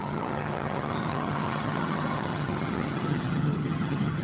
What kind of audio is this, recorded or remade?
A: remade